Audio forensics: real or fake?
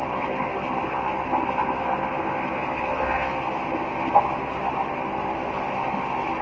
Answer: real